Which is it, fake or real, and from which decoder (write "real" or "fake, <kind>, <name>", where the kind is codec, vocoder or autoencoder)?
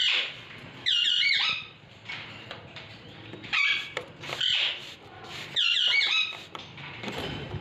fake, vocoder, BigVGAN v2